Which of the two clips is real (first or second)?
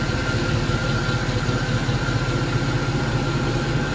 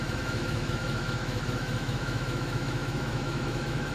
first